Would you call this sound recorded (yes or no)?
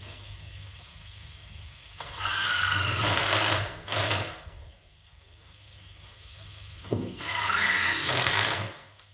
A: no